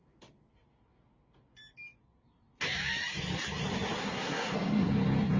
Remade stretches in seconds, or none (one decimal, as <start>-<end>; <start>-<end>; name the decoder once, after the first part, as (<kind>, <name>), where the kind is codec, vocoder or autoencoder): 4.0-4.9 (codec, SNAC)